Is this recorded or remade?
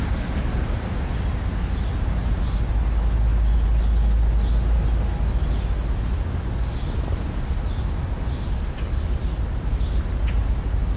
recorded